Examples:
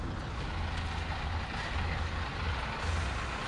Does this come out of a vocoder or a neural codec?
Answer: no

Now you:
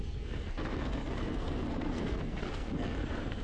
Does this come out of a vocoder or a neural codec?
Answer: yes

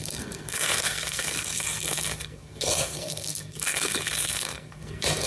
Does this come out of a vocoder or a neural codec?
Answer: yes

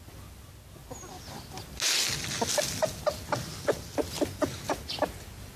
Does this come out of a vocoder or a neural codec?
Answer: no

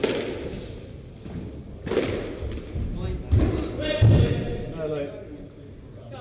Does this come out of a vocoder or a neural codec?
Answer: no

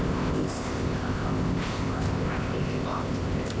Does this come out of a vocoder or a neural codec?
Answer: yes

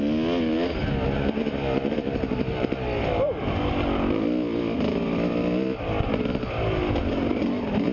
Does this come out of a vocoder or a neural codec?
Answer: no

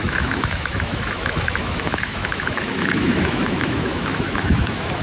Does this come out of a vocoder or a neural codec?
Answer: yes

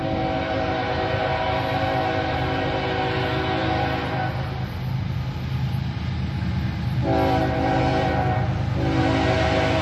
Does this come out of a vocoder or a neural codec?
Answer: no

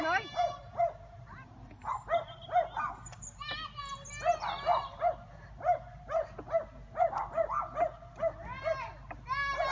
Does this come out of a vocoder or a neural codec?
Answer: no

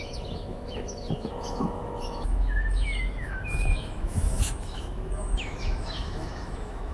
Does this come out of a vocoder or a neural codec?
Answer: yes